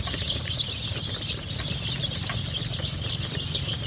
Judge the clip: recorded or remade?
recorded